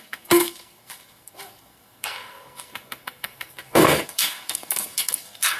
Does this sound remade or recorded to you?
remade